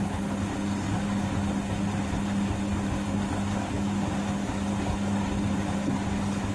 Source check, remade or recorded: recorded